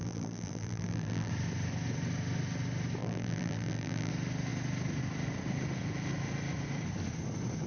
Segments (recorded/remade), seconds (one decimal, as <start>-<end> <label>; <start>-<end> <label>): 0.0-1.3 remade; 1.3-3.0 recorded; 3.0-4.1 remade; 4.1-7.7 recorded